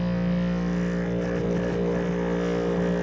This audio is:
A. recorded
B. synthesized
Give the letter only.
A